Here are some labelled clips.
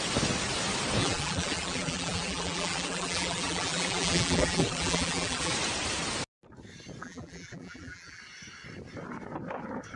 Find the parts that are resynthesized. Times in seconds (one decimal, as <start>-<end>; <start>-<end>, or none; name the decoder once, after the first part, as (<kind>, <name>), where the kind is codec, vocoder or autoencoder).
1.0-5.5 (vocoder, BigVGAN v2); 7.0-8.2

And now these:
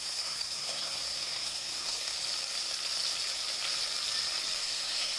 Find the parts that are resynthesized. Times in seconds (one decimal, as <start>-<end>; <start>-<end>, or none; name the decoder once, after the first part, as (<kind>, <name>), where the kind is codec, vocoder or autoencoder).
0.0-2.1 (codec, SNAC); 4.6-5.2

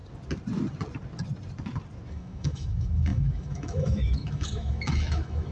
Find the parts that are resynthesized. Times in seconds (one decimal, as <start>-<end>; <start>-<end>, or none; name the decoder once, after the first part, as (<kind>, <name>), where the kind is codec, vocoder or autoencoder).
2.1-5.5 (autoencoder, DAC-VAE)

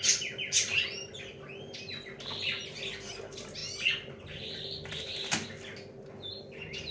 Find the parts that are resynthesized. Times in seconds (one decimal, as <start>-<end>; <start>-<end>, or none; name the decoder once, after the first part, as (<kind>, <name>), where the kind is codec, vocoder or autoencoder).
none